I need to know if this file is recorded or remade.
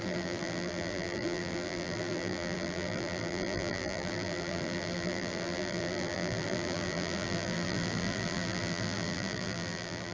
remade